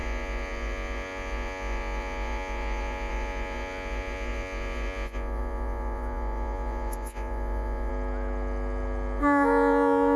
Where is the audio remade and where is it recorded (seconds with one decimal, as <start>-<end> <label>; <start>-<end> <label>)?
0.0-7.9 remade; 7.9-9.2 recorded; 9.2-10.2 remade